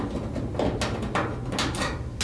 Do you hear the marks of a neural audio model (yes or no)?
no